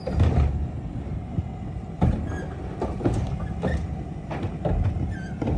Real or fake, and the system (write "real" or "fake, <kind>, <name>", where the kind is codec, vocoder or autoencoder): real